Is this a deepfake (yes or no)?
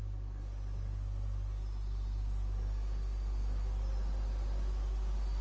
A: no